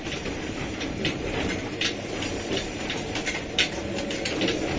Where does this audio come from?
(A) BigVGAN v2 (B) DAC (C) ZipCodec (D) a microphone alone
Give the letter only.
A